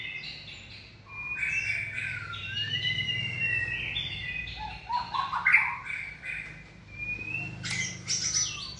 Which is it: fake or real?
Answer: real